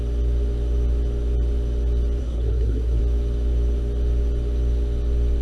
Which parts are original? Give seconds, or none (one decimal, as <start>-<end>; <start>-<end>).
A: 0.0-2.2; 3.0-5.4